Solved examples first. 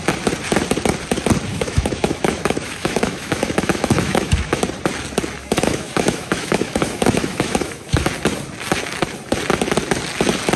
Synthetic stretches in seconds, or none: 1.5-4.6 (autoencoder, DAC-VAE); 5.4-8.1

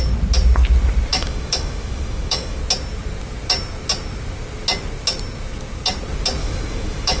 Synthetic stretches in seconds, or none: 1.1-2.6 (autoencoder, DAC-VAE); 6.4-7.2

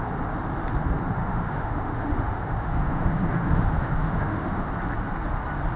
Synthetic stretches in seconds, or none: 1.2-4.7 (autoencoder, DAC-VAE)

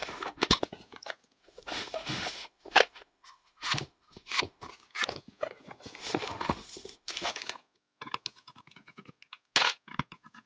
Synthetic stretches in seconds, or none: 0.0-0.6 (autoencoder, DAC-VAE); 1.4-4.7; 6.0-7.3